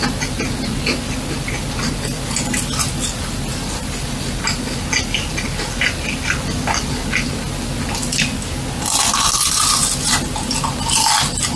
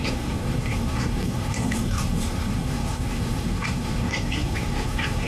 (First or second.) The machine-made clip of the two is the second